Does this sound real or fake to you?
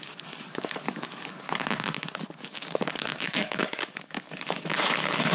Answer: fake